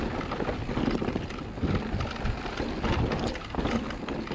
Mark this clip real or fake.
real